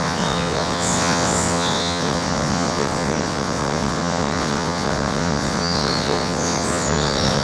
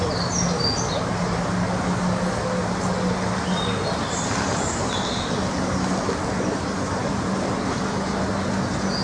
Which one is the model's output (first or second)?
first